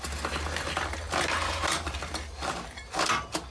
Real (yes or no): yes